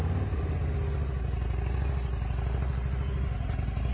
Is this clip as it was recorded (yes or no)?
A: yes